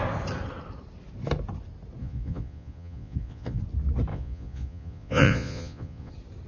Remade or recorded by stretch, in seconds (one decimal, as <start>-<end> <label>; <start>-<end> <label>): 0.0-2.0 recorded; 2.0-3.6 remade; 3.6-4.1 recorded; 4.1-6.1 remade; 6.1-6.5 recorded

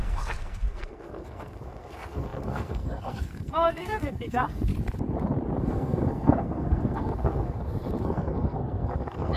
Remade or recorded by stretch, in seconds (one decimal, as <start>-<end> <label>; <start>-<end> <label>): 0.0-4.7 remade; 4.7-5.6 recorded; 5.6-9.4 remade

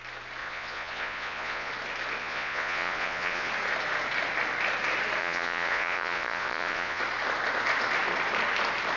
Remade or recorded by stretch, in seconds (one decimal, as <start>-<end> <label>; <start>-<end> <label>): 0.0-0.4 recorded; 0.4-1.7 remade; 1.7-2.2 recorded; 2.2-3.5 remade; 3.5-5.2 recorded; 5.2-7.0 remade; 7.0-9.0 recorded

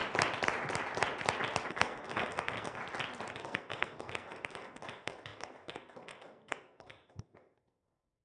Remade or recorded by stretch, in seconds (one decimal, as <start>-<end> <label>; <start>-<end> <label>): 0.0-1.7 recorded; 1.7-2.8 remade; 2.8-3.3 recorded; 3.3-8.2 remade

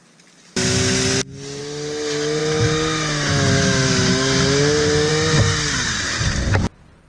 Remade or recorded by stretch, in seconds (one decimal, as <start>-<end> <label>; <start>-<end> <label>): 0.0-7.1 recorded

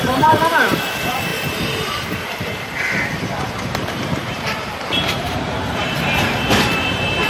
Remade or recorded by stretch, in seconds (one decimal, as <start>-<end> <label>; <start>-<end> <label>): 0.0-7.3 remade